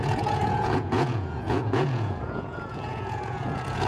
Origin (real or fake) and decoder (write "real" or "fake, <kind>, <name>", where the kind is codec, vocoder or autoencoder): fake, vocoder, Vocos